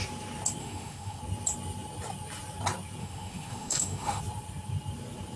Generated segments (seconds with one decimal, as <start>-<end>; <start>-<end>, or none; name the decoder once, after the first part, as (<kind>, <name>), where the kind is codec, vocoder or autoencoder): 0.6-1.2 (autoencoder, DAC-VAE); 3.0-4.2